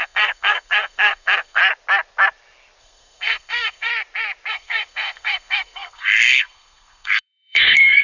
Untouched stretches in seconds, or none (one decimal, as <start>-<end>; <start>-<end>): 1.6-2.8; 3.9-4.5